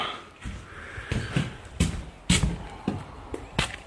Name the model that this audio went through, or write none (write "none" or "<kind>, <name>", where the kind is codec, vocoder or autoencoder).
none